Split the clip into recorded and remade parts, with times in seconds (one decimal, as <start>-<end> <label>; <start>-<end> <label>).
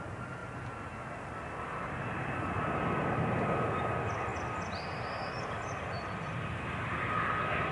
0.0-7.7 recorded